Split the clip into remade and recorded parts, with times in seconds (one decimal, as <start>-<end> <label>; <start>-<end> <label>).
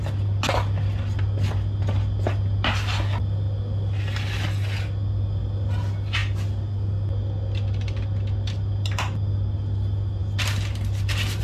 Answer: 0.0-11.4 recorded